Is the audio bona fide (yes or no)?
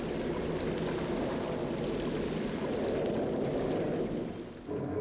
yes